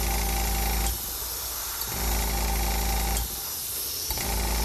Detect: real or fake real